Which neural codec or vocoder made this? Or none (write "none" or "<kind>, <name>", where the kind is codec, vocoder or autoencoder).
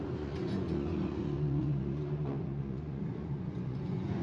vocoder, Vocos